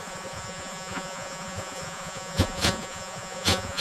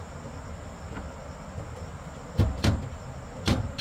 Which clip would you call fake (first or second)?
first